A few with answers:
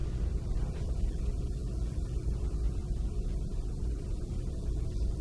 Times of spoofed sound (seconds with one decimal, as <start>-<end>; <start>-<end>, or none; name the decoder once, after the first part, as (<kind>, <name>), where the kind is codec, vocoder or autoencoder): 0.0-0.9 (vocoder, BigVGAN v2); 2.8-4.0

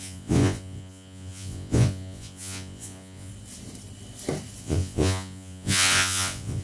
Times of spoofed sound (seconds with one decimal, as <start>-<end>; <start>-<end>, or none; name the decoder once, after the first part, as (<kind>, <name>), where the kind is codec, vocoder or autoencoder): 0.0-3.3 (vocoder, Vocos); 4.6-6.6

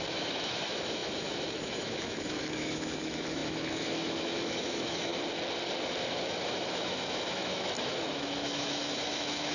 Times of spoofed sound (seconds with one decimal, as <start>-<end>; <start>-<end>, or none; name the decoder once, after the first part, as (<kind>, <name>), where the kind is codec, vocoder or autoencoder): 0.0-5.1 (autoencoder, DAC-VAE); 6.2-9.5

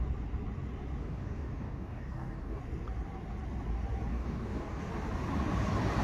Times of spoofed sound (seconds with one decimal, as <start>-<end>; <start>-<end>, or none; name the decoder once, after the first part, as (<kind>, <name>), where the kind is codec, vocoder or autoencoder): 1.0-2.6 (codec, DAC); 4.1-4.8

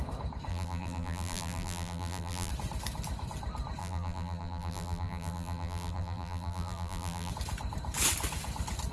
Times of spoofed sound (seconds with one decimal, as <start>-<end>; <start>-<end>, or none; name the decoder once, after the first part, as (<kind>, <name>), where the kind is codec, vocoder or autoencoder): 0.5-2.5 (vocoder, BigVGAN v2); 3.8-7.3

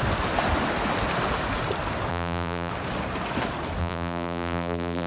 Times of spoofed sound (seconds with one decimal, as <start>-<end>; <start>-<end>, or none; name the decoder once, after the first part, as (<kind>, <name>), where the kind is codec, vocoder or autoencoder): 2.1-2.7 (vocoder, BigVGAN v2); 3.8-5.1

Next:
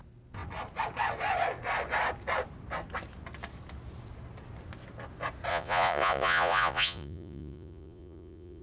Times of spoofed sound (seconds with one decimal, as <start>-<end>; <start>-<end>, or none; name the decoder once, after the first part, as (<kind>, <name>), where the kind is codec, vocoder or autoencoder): 5.5-8.6 (vocoder, Vocos)